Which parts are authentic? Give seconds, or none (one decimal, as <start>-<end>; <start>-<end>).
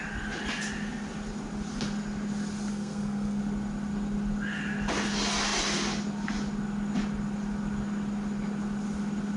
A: 0.0-2.7; 3.4-9.4